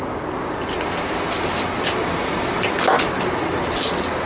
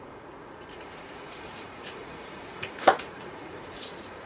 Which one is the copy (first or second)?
second